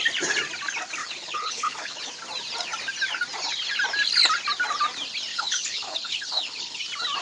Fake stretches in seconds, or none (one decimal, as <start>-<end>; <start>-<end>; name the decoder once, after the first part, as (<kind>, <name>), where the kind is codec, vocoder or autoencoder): 1.0-2.1 (codec, HILCodec); 5.3-6.8